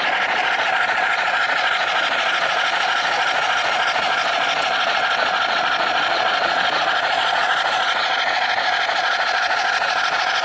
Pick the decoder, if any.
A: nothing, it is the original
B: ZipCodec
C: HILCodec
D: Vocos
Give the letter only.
D